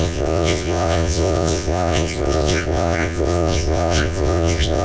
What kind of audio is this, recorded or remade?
remade